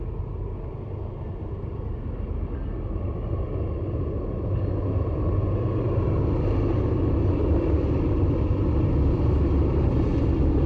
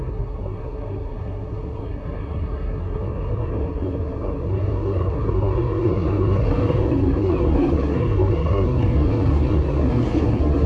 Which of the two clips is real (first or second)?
first